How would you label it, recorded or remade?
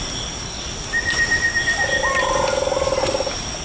recorded